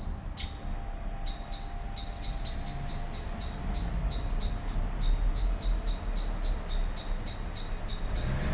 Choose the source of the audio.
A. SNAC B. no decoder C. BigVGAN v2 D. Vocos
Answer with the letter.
B